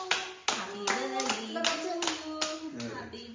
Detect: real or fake real